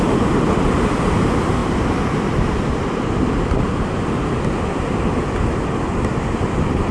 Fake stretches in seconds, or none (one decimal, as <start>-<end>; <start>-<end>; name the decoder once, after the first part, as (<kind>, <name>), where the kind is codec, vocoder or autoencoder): 0.0-1.6 (vocoder, BigVGAN v2); 5.7-6.9